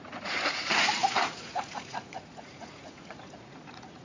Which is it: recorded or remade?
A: remade